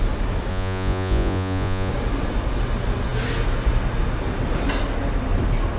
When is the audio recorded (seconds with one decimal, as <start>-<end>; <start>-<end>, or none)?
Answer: 0.0-0.5; 1.9-5.8